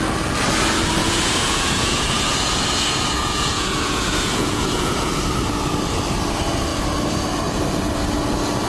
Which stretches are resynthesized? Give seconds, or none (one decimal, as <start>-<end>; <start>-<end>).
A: 1.0-5.1